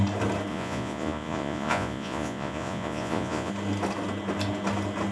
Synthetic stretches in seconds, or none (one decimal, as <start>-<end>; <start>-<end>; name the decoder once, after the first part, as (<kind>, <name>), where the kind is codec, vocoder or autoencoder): 0.5-3.5 (vocoder, Vocos)